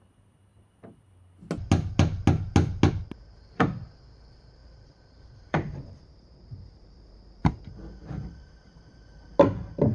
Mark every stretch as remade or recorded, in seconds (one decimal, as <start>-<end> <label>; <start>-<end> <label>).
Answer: 0.0-4.6 recorded; 4.6-7.6 remade; 7.6-9.9 recorded